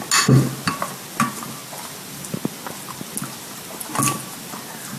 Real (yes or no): yes